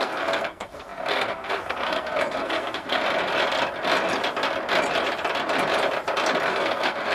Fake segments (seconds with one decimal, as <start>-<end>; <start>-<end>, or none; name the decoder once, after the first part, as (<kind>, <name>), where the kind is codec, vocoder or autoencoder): 0.0-3.0 (codec, SNAC); 6.5-7.1